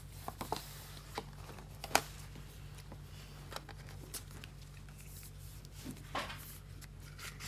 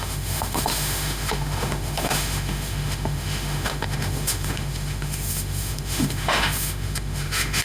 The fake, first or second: second